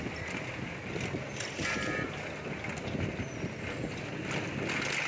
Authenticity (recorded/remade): recorded